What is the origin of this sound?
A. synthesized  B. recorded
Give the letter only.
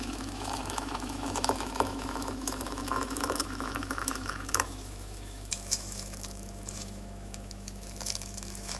A